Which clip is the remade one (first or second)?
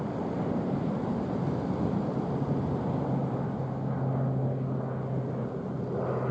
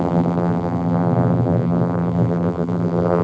second